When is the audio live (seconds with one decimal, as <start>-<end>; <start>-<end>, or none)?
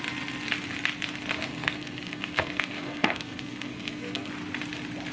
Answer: 0.0-1.5; 4.3-5.1